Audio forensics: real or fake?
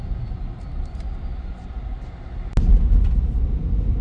real